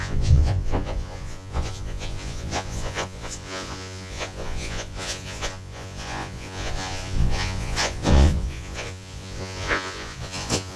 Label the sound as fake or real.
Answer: fake